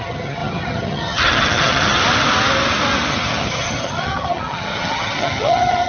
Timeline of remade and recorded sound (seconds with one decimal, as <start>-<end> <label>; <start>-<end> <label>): 0.0-2.0 remade; 2.0-3.1 recorded; 3.1-5.9 remade